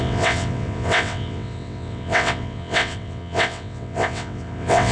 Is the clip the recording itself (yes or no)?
no